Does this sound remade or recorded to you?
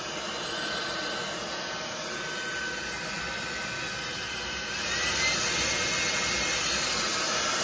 recorded